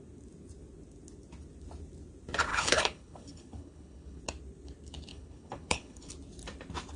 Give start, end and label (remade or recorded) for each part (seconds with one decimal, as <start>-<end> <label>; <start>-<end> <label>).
0.0-2.5 recorded; 2.5-4.2 remade; 4.2-5.1 recorded; 5.1-6.1 remade; 6.1-7.0 recorded

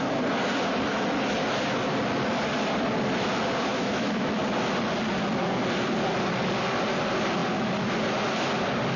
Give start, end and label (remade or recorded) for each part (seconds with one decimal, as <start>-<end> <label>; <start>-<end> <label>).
0.0-3.7 recorded; 3.7-4.3 remade; 4.3-9.0 recorded